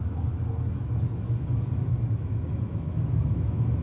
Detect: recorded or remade remade